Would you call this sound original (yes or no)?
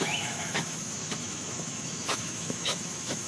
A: no